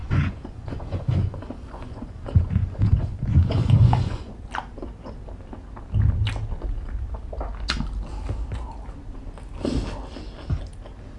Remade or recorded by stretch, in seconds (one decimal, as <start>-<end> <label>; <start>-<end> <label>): 0.0-4.3 remade; 4.3-11.2 recorded